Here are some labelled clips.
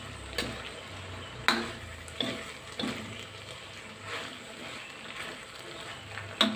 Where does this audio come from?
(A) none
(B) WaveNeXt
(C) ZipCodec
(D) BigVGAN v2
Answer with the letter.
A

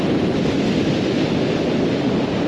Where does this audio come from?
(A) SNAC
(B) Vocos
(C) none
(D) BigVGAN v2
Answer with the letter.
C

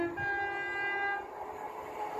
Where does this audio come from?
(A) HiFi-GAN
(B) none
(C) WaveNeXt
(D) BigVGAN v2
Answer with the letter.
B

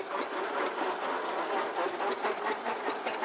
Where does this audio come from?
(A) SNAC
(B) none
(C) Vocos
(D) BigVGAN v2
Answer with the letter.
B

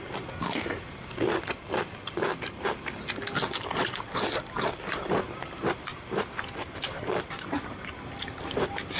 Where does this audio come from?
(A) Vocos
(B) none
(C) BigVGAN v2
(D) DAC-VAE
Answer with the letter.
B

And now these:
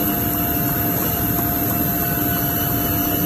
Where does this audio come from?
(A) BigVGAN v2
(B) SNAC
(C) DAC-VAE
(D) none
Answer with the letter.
D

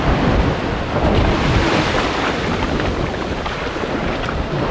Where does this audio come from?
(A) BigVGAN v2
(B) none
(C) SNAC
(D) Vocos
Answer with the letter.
A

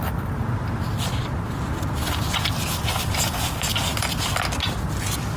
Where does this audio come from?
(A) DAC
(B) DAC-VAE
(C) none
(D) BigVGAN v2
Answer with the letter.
C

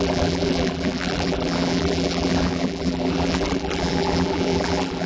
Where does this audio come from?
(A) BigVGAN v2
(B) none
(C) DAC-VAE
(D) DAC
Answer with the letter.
A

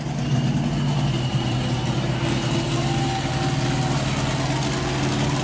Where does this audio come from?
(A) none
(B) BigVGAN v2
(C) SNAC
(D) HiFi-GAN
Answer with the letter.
A